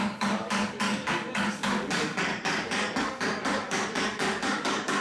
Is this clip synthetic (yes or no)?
yes